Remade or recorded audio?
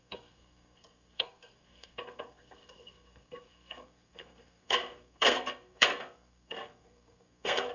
remade